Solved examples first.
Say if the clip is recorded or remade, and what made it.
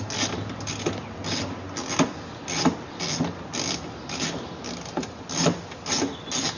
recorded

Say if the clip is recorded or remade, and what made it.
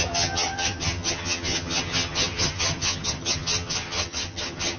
remade, vocoder, HiFi-GAN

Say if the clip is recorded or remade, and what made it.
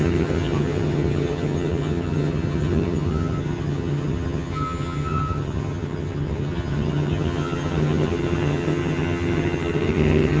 remade, vocoder, HiFi-GAN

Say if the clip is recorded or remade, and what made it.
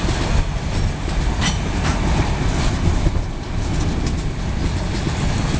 recorded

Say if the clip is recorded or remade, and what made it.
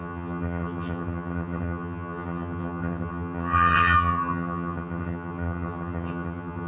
remade, vocoder, HiFi-GAN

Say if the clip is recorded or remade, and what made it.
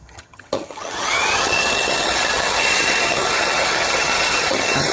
remade, vocoder, HiFi-GAN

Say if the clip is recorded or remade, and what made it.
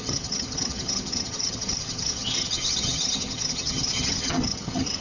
remade, vocoder, HiFi-GAN